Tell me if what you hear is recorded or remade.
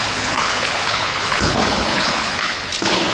remade